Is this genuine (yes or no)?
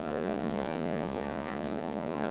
no